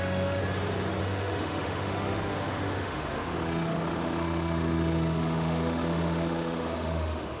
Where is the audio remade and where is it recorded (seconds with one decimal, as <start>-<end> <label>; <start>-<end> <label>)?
0.0-0.4 remade; 0.4-1.0 recorded; 1.0-7.4 remade